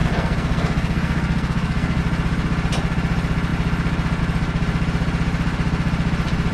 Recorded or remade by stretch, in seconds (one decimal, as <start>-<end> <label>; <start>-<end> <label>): 0.0-2.0 remade; 2.0-6.5 recorded